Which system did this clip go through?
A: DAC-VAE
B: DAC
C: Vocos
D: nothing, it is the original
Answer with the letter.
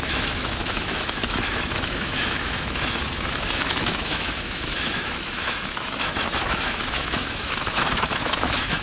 A